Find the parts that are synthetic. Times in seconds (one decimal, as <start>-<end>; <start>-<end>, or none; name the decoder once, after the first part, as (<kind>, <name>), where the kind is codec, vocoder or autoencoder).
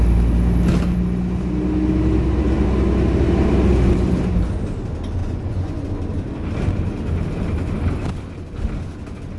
5.2-5.9 (vocoder, Vocos)